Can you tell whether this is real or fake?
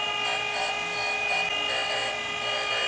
real